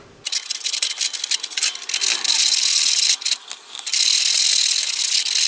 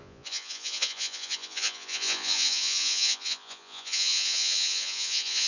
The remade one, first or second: second